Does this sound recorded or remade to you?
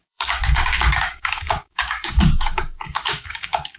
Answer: remade